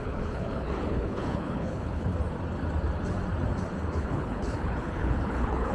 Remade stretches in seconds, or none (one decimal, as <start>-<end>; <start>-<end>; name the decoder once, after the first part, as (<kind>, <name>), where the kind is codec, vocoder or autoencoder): 0.0-2.1 (codec, HILCodec); 4.0-5.7

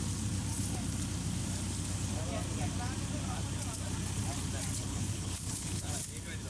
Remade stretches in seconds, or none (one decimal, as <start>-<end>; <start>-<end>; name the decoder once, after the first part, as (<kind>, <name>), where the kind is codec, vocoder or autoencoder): 4.8-5.9 (codec, HILCodec)

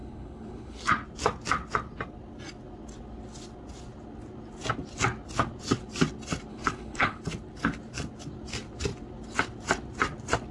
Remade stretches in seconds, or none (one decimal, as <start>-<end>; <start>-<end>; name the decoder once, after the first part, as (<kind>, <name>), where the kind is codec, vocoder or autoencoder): 0.0-0.8 (codec, HILCodec); 6.5-7.2

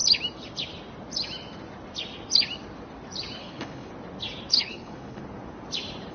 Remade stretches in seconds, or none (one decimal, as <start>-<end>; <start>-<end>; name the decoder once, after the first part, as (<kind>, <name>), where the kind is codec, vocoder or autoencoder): 3.4-3.9 (codec, HILCodec); 4.5-5.2

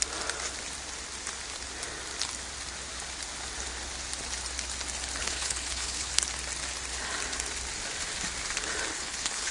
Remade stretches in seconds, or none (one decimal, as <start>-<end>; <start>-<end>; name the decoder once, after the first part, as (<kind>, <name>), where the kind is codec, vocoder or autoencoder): 5.2-6.1 (codec, HILCodec); 8.9-9.5